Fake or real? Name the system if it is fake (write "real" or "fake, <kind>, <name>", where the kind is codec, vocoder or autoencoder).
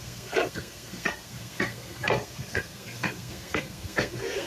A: fake, codec, SNAC